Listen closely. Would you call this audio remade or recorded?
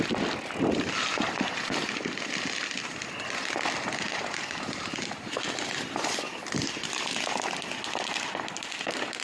recorded